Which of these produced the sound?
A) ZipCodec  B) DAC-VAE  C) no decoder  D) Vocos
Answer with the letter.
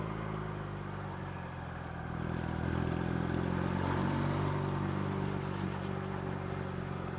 C